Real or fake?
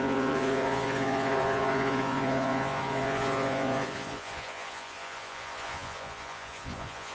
fake